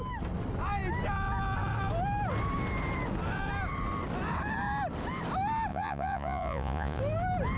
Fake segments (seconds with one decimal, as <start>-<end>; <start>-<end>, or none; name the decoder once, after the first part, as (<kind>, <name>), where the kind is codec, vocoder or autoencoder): 5.7-7.0 (vocoder, Vocos)